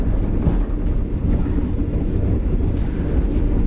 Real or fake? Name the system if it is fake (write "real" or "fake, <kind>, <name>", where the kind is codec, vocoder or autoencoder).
real